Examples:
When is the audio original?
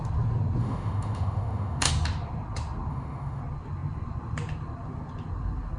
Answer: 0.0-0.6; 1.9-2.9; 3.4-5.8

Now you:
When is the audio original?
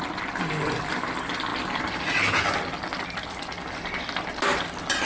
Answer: 0.0-5.0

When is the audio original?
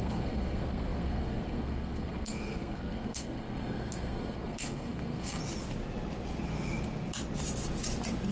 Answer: 5.4-8.3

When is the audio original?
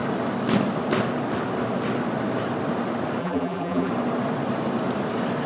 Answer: 0.0-3.2; 3.9-5.5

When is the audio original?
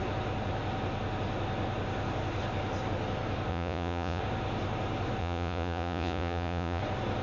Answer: 0.0-3.5; 4.2-5.2; 6.8-7.2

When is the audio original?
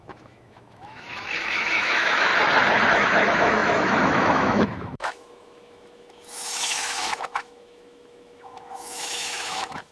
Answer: 2.3-2.9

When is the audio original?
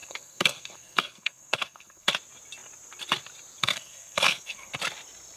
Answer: 2.1-3.6; 4.7-5.4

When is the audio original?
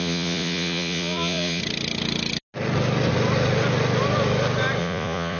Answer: 1.6-4.8